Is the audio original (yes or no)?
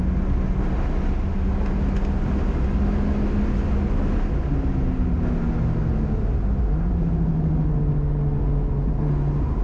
yes